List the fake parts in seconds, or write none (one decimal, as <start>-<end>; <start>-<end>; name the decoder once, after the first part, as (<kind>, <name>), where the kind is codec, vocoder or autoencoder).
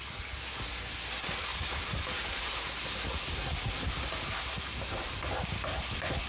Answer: none